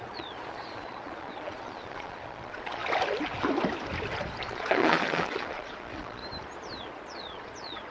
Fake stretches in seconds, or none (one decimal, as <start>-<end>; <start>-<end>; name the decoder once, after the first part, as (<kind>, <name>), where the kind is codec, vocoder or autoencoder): 0.0-2.8 (vocoder, Vocos); 4.4-6.2; 6.8-7.9